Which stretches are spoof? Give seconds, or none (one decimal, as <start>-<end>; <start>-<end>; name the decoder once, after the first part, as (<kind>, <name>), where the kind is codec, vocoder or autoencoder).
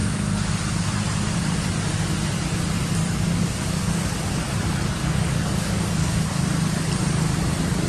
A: 3.0-4.0 (codec, DAC); 5.0-6.4